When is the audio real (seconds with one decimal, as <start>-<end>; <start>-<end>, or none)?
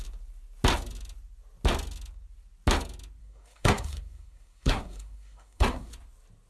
0.0-3.2; 5.9-6.5